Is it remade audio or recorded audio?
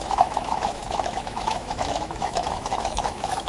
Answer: remade